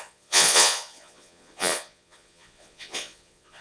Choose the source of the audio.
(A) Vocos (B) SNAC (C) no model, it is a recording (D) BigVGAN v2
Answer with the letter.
A